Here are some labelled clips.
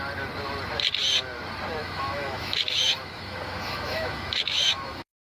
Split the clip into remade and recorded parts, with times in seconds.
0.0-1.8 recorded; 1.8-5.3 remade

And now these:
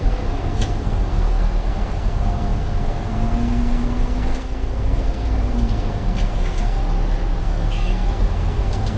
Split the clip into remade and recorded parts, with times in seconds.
0.0-6.8 remade; 6.8-7.4 recorded; 7.4-9.0 remade

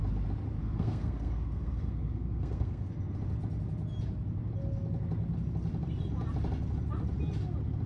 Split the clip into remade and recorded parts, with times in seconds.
0.0-0.6 recorded; 0.6-2.9 remade; 2.9-7.9 recorded

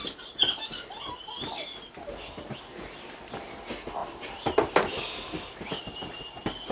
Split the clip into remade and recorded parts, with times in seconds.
0.0-6.7 recorded